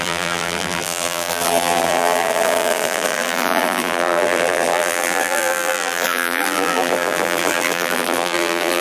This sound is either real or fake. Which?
fake